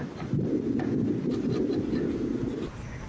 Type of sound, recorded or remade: recorded